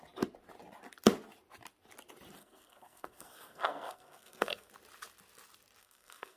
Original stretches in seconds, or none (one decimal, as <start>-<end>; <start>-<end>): 0.0-2.4; 4.7-5.8

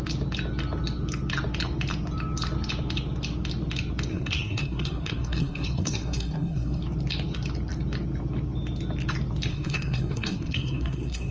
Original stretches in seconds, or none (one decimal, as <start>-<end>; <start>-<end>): 0.0-4.1; 6.8-9.5